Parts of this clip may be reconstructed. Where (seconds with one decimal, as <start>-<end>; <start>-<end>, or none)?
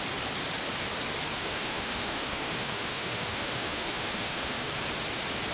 1.4-4.7